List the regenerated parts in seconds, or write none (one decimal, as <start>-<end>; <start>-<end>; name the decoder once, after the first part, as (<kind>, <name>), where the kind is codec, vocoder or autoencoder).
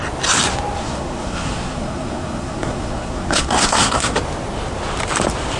0.8-4.2 (codec, SNAC)